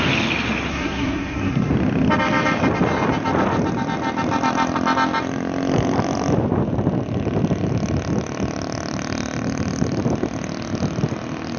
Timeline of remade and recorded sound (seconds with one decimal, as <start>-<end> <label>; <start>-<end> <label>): 0.0-0.7 recorded; 0.7-1.7 remade; 1.7-11.6 recorded